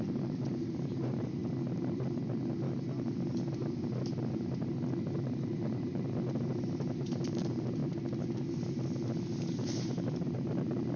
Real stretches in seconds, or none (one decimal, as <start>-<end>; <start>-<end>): 1.4-5.2; 7.8-9.4